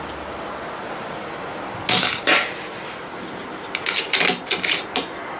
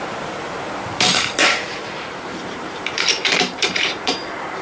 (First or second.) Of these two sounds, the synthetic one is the second